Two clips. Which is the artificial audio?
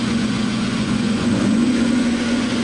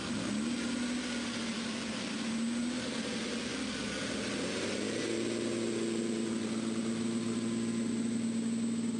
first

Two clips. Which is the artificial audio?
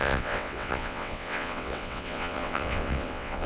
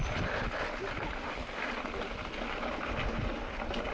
first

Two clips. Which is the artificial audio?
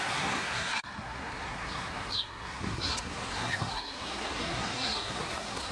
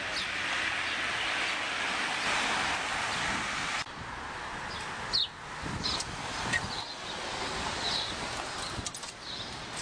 first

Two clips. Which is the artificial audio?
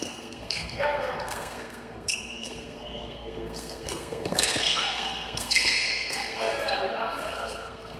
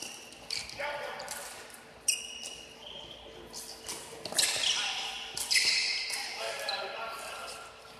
first